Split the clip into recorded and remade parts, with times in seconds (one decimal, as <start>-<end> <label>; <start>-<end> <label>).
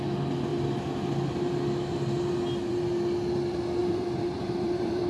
0.0-3.8 recorded; 3.8-5.1 remade